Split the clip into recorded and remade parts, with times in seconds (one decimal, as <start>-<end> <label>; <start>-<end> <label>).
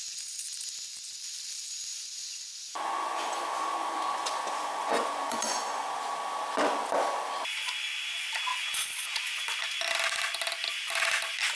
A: 0.0-1.9 recorded; 1.9-6.0 remade; 6.0-8.5 recorded; 8.5-9.4 remade; 9.4-11.6 recorded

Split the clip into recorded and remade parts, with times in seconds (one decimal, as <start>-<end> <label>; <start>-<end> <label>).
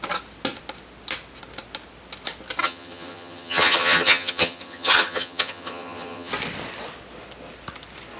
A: 0.0-2.6 recorded; 2.6-6.3 remade; 6.3-8.2 recorded